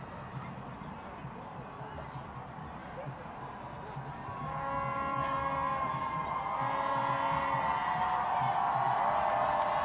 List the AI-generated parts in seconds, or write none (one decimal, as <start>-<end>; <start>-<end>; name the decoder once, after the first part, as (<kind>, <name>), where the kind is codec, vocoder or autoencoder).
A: none